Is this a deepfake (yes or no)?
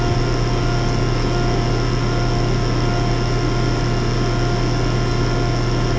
no